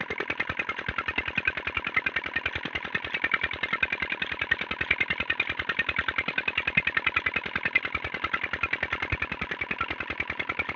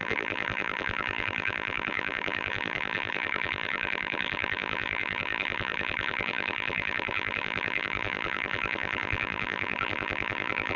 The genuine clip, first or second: first